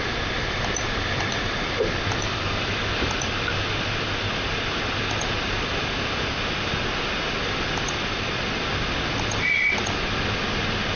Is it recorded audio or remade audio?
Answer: recorded